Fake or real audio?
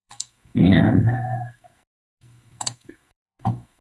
fake